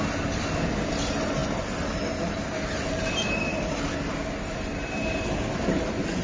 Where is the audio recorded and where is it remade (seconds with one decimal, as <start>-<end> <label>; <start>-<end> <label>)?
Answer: 0.0-6.2 recorded